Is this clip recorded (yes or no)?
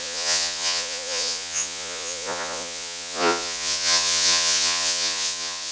no